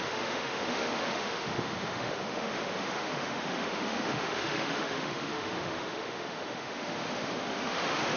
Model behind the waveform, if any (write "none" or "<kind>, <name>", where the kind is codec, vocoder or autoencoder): autoencoder, DAC-VAE